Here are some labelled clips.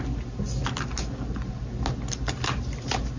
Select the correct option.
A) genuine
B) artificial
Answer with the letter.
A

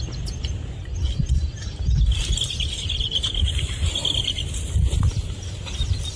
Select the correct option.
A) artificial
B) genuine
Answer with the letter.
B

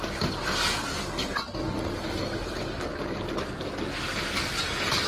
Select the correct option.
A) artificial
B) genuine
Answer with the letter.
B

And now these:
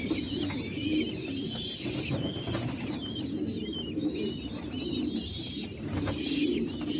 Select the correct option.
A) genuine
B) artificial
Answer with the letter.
A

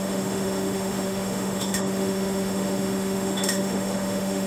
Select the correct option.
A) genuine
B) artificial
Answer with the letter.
B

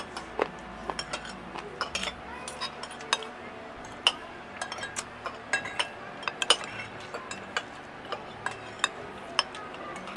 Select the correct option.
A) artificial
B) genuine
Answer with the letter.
B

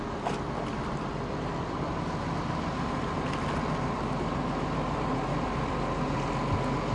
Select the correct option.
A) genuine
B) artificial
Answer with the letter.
A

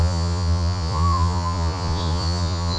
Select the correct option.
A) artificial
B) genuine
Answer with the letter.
A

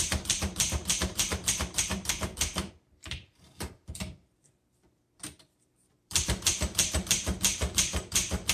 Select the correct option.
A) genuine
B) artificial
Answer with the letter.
B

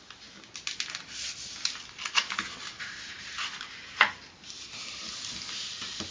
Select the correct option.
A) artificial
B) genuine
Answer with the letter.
B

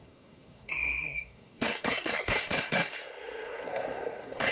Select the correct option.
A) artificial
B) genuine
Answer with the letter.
A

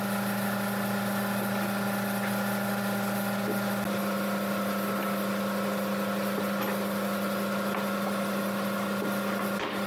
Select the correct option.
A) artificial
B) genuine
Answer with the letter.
B